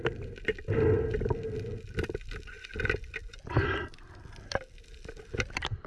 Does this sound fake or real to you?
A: real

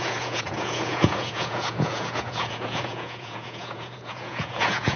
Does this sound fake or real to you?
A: fake